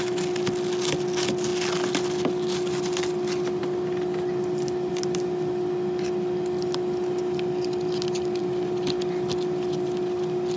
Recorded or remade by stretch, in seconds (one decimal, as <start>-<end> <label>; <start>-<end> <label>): 0.0-10.6 recorded